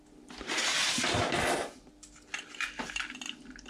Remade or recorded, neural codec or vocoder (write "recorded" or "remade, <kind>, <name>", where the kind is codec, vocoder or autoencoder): recorded